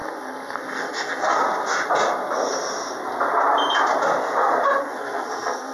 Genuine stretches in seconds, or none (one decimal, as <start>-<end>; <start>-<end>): 1.4-4.8